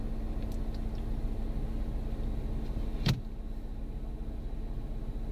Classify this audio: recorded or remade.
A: recorded